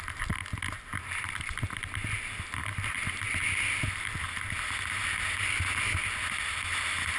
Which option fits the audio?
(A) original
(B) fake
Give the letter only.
A